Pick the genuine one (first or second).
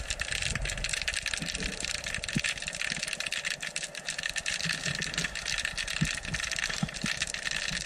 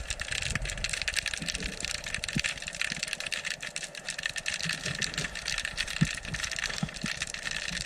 first